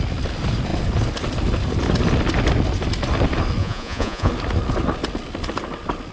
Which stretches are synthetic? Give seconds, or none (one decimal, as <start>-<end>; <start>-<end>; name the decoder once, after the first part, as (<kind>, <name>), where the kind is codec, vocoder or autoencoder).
3.6-4.3 (vocoder, Vocos)